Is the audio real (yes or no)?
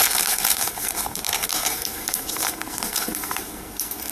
no